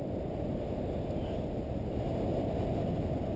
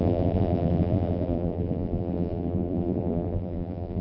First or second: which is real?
first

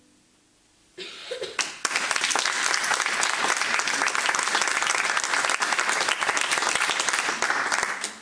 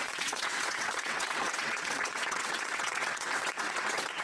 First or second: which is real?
first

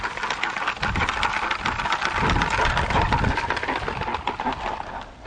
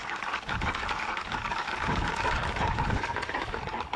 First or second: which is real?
first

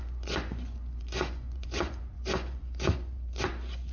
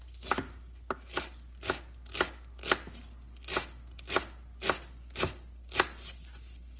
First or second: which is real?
second